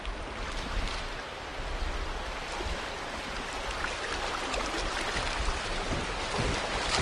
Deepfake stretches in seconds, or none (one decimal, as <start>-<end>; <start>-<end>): none